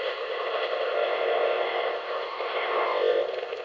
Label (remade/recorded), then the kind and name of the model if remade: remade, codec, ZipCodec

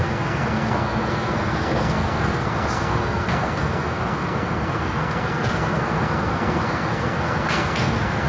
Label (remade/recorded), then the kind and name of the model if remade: remade, codec, SNAC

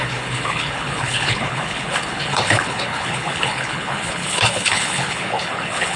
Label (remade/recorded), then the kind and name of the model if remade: remade, codec, HILCodec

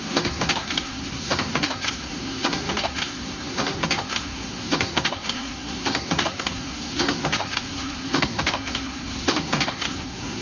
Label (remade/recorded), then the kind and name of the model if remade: remade, codec, SNAC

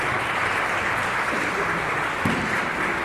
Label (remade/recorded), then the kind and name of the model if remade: recorded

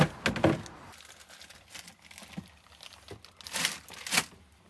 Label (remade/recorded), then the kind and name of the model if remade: recorded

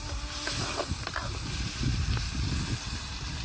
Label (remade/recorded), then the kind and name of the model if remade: recorded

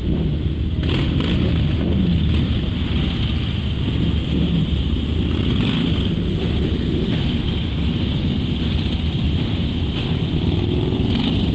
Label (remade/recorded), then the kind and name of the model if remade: recorded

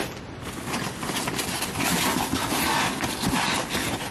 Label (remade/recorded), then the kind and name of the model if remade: recorded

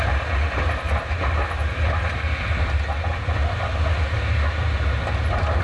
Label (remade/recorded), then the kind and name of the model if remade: recorded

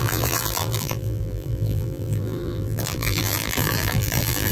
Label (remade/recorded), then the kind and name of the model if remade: remade, vocoder, BigVGAN v2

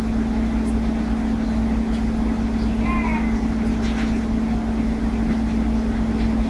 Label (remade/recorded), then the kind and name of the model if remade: recorded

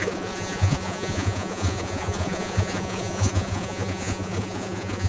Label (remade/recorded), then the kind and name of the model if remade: remade, vocoder, Vocos